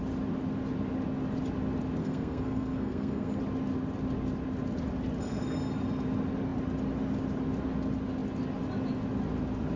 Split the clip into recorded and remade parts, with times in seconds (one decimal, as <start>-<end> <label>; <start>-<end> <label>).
0.0-2.0 recorded; 2.0-3.4 remade; 3.4-9.8 recorded